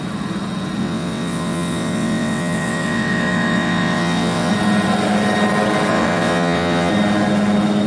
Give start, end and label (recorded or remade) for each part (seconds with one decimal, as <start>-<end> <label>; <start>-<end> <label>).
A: 0.0-0.8 recorded; 0.8-4.5 remade; 4.5-5.9 recorded; 5.9-6.9 remade; 6.9-7.9 recorded